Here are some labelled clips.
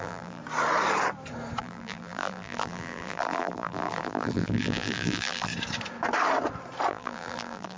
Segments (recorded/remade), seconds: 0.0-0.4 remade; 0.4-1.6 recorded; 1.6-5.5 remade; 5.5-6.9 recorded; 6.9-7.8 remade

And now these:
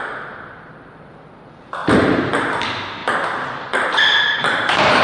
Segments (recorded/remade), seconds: 0.0-1.8 recorded; 1.8-2.6 remade; 2.6-3.0 recorded; 3.0-5.0 remade

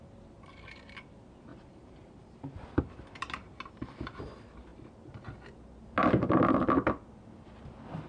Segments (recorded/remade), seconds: 0.0-1.5 recorded; 1.5-2.8 remade; 2.8-8.1 recorded

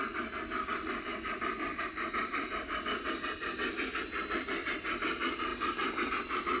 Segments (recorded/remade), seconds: 0.0-5.5 remade; 5.5-6.1 recorded; 6.1-6.6 remade

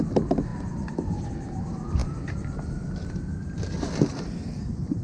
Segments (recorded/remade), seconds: 0.0-4.1 recorded; 4.1-5.0 remade

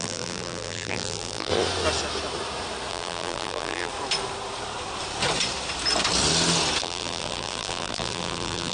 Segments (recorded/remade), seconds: 0.0-1.5 remade; 1.5-2.9 recorded; 2.9-3.9 remade; 3.9-6.8 recorded; 6.8-8.7 remade

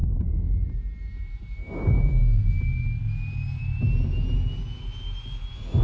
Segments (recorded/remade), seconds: 0.0-2.2 remade; 2.2-5.8 recorded

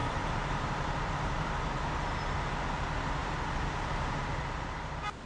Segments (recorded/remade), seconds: 0.0-1.5 remade; 1.5-3.2 recorded; 3.2-4.2 remade; 4.2-5.3 recorded